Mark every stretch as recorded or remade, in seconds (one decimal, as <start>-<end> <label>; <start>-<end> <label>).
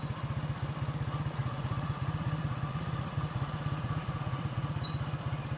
0.0-1.4 recorded; 1.4-4.8 remade; 4.8-5.6 recorded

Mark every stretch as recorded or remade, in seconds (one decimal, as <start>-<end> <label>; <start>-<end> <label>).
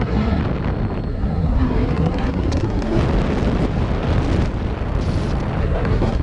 0.0-0.4 remade; 0.4-1.1 recorded; 1.1-3.0 remade; 3.0-5.6 recorded; 5.6-6.2 remade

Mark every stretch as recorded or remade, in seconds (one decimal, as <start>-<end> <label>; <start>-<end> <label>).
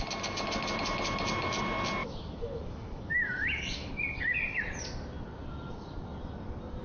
0.0-2.0 recorded; 2.0-3.9 remade; 3.9-6.8 recorded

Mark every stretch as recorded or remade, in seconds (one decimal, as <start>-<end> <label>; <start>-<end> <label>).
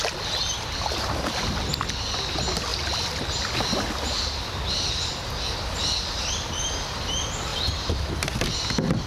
0.0-7.5 recorded; 7.5-8.1 remade; 8.1-9.1 recorded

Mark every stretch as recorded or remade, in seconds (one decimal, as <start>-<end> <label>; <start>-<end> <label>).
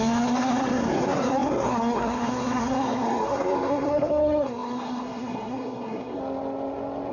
0.0-6.2 remade; 6.2-7.1 recorded